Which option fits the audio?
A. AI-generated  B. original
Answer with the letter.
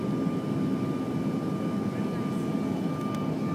B